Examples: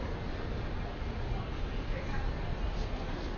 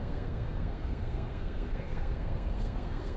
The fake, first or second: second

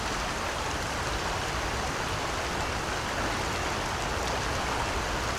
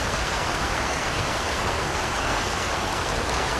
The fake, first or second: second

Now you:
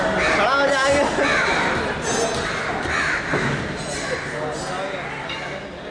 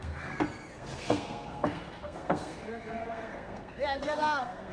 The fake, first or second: second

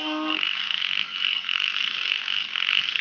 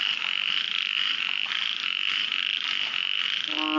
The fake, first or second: first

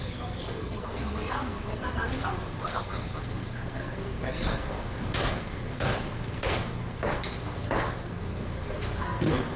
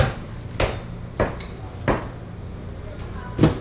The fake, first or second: first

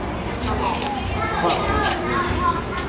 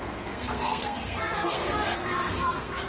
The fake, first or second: second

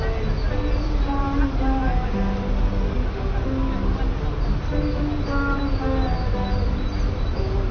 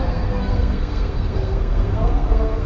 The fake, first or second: second